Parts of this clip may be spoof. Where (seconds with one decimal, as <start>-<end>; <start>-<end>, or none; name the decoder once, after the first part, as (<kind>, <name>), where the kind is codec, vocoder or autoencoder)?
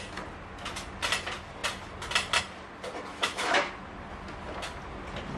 3.1-3.7 (autoencoder, DAC-VAE)